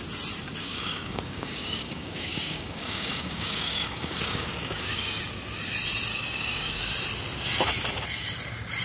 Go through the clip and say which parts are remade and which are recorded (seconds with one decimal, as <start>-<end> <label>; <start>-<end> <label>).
0.0-0.6 recorded; 0.6-5.2 remade; 5.2-6.1 recorded; 6.1-6.8 remade; 6.8-8.8 recorded